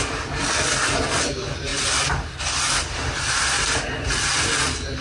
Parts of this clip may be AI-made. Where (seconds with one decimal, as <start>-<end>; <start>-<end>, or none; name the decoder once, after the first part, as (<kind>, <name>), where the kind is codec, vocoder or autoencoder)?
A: none